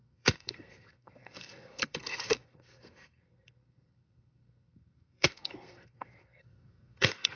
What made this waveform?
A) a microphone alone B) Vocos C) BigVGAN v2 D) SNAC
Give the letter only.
D